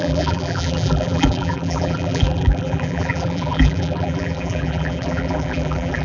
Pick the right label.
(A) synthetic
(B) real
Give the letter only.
A